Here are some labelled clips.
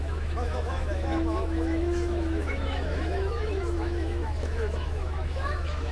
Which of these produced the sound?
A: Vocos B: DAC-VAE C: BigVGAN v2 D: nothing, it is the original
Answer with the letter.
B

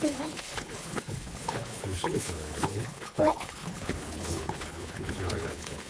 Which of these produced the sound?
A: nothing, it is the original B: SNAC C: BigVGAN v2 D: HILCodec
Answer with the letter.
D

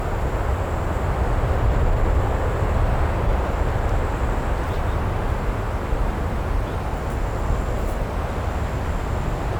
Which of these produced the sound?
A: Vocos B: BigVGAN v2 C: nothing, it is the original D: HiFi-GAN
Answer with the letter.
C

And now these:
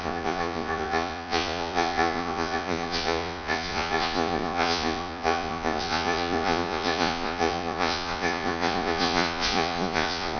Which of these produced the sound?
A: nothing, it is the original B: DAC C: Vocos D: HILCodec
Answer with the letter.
C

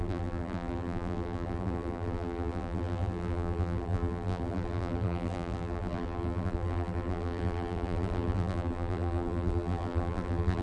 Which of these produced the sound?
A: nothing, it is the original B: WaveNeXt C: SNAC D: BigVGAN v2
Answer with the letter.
D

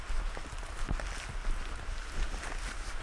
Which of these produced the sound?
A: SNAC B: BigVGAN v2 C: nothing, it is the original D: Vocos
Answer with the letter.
C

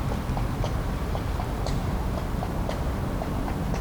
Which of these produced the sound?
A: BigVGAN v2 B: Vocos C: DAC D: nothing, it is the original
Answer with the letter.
D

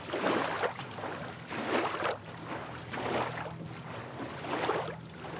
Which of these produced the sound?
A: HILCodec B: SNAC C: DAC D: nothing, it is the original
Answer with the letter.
D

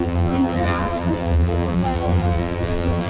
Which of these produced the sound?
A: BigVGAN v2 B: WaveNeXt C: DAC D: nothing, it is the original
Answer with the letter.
A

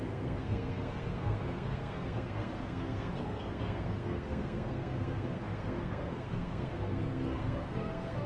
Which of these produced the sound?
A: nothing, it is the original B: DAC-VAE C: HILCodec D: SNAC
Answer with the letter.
D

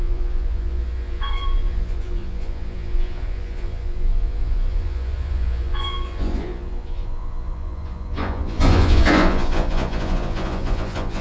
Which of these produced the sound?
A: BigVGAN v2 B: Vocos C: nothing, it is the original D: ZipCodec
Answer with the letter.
B